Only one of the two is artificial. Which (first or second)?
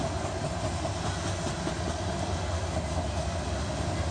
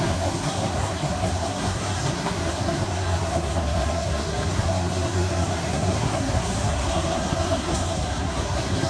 second